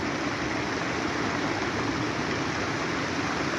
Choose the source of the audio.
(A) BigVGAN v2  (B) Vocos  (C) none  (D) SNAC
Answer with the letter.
C